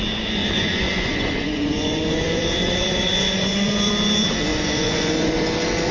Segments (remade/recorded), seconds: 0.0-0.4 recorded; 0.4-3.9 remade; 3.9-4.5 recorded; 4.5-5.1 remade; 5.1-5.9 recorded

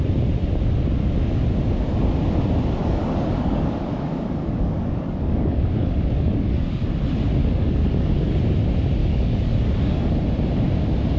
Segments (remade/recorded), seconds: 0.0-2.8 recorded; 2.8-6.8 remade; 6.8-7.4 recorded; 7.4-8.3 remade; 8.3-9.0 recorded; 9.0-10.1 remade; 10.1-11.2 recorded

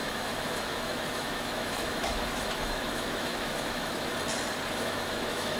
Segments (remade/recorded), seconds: 0.0-4.1 remade; 4.1-4.7 recorded; 4.7-5.6 remade

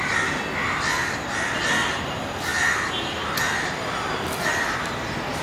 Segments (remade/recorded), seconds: 0.0-5.4 recorded

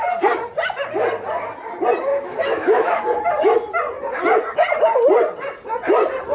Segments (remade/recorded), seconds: 0.0-2.1 recorded; 2.1-3.0 remade; 3.0-6.3 recorded

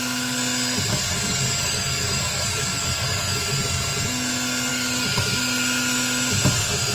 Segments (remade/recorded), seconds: 0.0-0.9 recorded; 0.9-3.6 remade; 3.6-4.7 recorded; 4.7-5.3 remade; 5.3-6.9 recorded